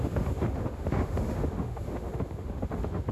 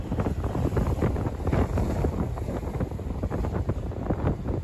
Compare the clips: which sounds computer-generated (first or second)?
first